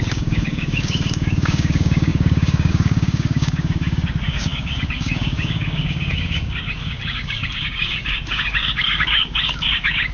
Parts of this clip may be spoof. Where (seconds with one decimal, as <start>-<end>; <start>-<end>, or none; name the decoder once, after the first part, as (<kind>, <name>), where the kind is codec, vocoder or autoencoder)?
0.0-10.1 (codec, DAC)